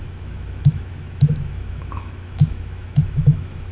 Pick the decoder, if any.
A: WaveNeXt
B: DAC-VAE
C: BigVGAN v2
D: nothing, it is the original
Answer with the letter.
B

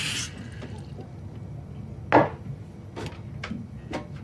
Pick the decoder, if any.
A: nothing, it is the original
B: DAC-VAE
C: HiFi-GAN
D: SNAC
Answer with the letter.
A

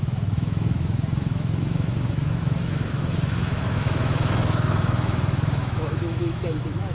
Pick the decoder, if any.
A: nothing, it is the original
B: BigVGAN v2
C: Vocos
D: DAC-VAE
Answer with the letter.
D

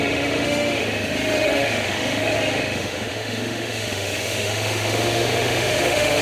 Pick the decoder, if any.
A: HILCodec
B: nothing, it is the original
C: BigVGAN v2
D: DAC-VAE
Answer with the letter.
D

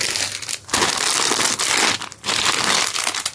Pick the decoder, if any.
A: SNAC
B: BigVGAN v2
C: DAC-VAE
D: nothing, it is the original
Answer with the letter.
D